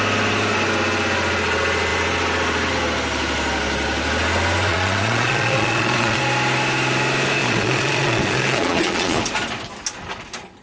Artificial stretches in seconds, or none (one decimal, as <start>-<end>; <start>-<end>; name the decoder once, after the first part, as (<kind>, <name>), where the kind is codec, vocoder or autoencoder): 4.7-6.2 (vocoder, Vocos); 7.4-9.2